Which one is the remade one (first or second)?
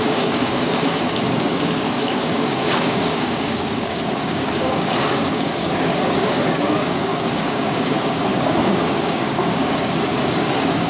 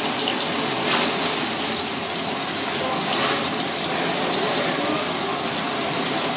first